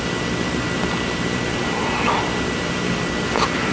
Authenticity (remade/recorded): recorded